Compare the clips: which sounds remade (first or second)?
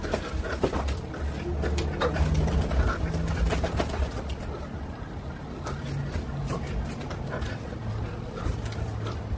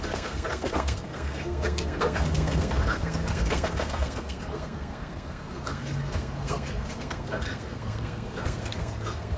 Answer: second